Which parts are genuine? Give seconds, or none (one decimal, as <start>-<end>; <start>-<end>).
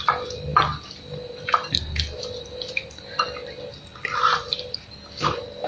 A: 0.0-3.9; 5.0-5.7